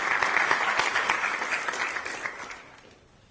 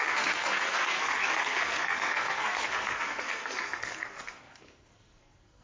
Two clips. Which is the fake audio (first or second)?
second